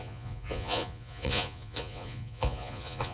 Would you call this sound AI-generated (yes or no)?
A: yes